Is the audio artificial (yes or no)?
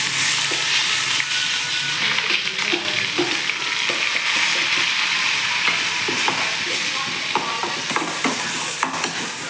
no